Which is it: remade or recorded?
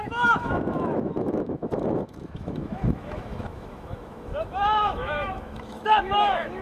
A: remade